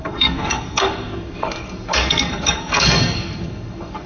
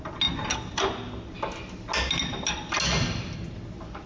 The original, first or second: second